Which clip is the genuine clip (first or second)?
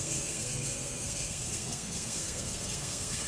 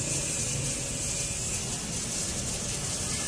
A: second